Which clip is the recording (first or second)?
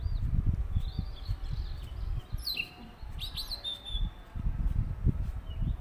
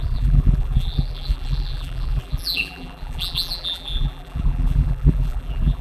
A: first